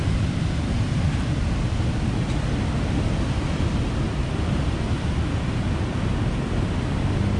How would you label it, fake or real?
real